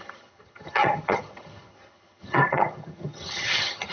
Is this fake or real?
fake